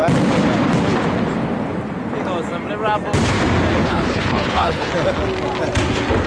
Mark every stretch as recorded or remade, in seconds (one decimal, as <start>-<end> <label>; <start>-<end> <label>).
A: 0.0-3.8 recorded; 3.8-4.9 remade; 4.9-6.3 recorded